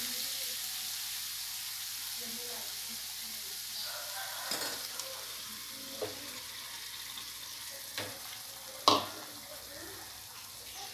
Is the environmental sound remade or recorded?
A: recorded